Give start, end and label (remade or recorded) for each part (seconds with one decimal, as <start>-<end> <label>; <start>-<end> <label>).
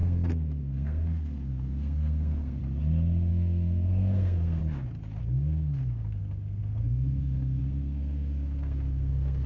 0.0-2.6 remade; 2.6-3.3 recorded; 3.3-4.6 remade; 4.6-5.2 recorded; 5.2-9.5 remade